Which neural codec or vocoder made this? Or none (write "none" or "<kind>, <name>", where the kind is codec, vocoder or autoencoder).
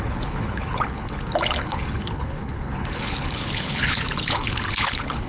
codec, HILCodec